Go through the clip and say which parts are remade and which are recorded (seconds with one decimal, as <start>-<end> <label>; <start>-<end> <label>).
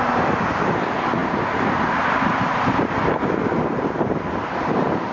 0.0-5.1 recorded